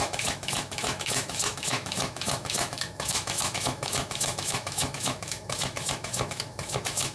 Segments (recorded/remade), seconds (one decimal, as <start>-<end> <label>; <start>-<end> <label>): 0.0-7.1 remade